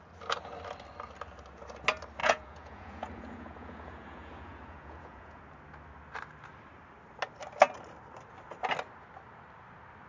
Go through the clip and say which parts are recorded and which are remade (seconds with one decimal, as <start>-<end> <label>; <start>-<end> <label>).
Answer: 0.0-2.2 recorded; 2.2-5.4 remade; 5.4-10.1 recorded